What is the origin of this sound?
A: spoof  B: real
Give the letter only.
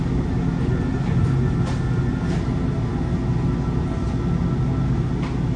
B